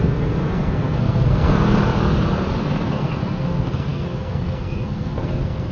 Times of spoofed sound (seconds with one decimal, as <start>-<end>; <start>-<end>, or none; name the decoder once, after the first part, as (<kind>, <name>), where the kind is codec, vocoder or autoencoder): 0.0-1.8 (codec, SNAC); 2.6-5.7

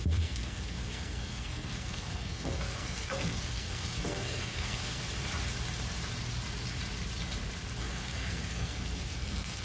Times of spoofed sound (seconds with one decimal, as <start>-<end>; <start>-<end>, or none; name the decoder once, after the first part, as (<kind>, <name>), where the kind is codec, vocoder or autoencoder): 0.0-5.0 (codec, SNAC); 7.8-9.6

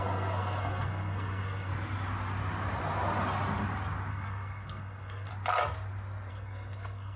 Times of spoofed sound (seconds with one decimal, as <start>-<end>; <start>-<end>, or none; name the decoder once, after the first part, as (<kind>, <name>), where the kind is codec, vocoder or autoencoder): 0.0-1.7 (codec, SNAC); 4.1-5.3; 6.3-7.2

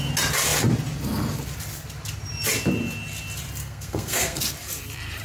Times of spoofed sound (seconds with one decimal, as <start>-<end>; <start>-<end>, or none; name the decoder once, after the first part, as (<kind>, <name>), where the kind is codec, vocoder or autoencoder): 3.6-4.4 (codec, SNAC)